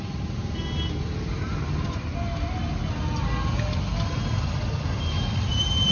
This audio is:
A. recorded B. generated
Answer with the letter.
A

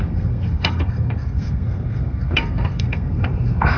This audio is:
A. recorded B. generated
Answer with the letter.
B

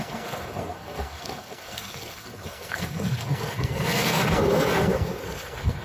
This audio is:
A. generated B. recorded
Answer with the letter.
A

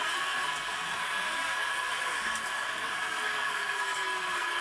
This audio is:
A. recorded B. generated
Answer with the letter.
B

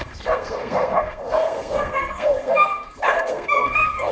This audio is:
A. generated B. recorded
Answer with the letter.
A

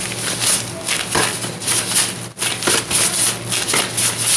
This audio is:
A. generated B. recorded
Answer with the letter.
B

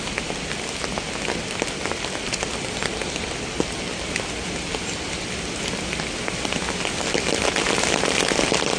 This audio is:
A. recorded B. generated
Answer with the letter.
A